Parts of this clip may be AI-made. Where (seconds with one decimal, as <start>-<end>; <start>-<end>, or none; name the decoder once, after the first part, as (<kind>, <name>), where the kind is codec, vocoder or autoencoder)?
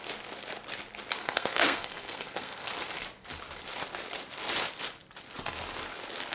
1.2-2.7 (codec, SNAC)